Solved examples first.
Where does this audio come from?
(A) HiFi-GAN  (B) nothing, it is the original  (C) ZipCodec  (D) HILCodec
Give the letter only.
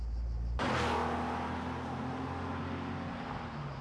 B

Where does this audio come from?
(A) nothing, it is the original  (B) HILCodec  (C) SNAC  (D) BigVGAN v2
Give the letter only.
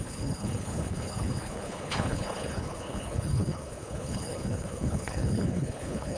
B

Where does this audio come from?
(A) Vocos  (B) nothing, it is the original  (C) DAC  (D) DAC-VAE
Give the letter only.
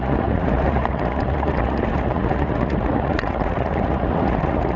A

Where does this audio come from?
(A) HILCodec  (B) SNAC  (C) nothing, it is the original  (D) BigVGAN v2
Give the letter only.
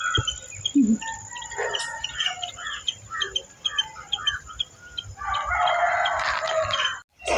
C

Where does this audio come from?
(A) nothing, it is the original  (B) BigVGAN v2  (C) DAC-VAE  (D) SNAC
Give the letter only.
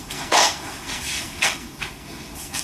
D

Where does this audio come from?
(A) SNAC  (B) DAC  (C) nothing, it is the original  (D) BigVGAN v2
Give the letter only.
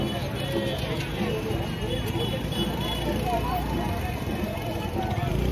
C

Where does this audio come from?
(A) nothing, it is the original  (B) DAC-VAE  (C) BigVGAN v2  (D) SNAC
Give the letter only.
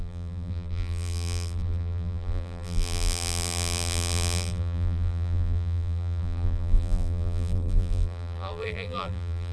C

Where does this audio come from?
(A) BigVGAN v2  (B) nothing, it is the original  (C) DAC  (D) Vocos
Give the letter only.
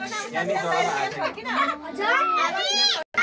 B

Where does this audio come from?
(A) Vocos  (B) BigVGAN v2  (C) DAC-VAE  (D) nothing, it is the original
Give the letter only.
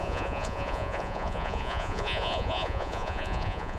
A